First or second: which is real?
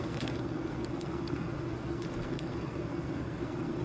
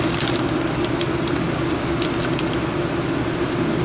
second